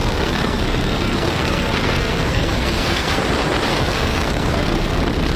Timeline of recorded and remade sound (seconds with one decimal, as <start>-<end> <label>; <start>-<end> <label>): 0.0-3.2 remade; 3.2-3.7 recorded; 3.7-5.0 remade; 5.0-5.4 recorded